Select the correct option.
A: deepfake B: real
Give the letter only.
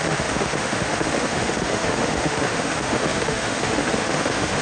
A